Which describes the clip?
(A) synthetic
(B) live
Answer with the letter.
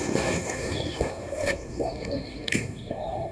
A